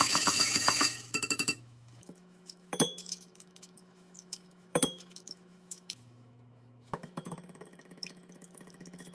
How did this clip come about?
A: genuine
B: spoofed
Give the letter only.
B